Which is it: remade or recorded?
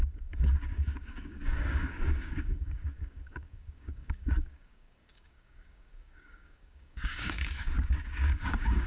remade